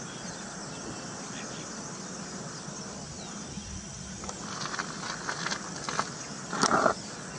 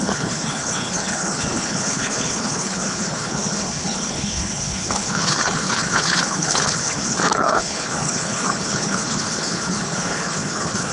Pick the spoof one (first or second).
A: second